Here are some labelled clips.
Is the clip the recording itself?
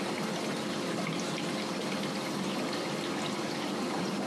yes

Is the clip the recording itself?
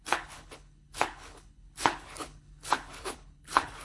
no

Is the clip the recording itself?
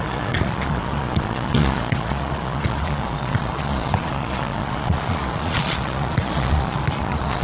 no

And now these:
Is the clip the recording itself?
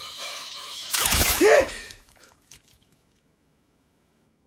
no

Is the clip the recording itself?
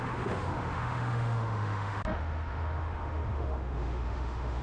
no